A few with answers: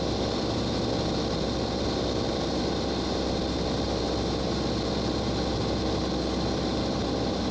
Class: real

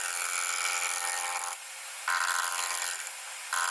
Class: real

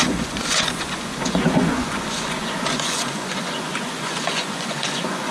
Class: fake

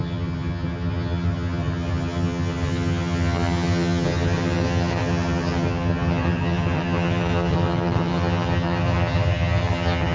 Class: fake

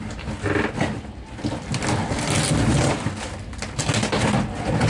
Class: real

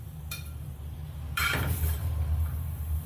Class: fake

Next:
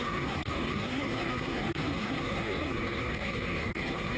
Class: fake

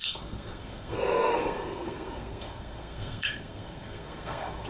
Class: fake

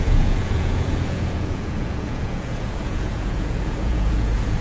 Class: fake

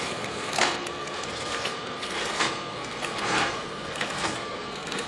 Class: fake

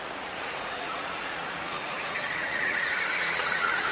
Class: fake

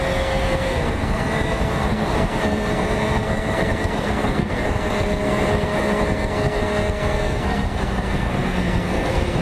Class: fake